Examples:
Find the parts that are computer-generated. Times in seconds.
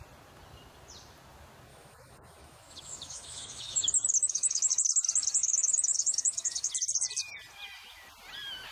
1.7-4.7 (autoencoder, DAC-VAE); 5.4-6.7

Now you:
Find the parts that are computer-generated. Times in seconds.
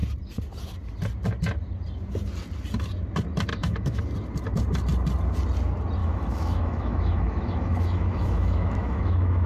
3.5-4.0 (autoencoder, DAC-VAE); 6.0-9.5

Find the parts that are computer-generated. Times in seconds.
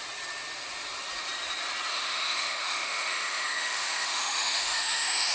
1.9-5.3 (autoencoder, DAC-VAE)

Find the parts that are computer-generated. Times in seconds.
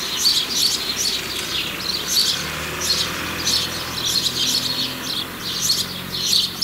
none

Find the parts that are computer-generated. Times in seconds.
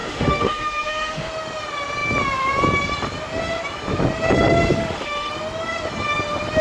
0.0-1.3 (autoencoder, DAC-VAE); 4.8-5.3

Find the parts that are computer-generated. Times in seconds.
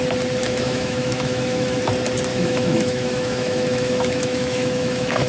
0.4-1.8 (autoencoder, DAC-VAE); 2.3-5.3